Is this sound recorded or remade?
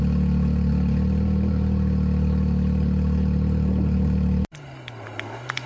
recorded